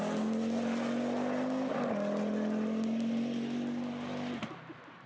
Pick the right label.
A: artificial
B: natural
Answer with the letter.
B